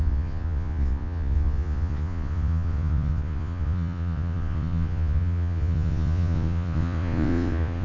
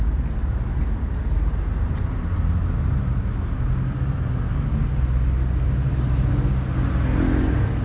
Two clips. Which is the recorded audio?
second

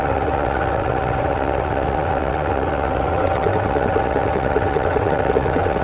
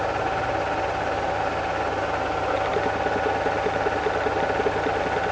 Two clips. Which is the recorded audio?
second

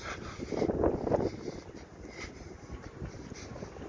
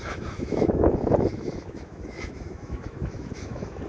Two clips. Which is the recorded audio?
first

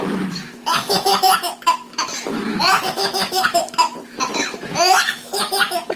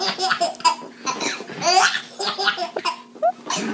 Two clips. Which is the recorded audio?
second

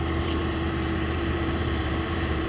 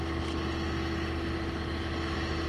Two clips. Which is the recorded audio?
second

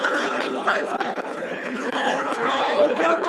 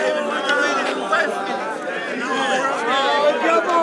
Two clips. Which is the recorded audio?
second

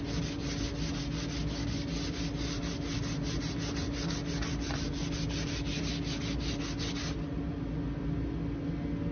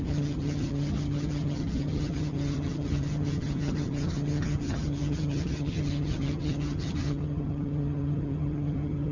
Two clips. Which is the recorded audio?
first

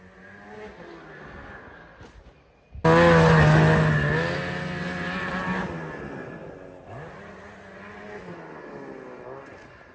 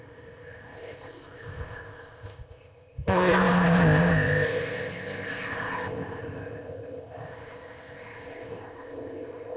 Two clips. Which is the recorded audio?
first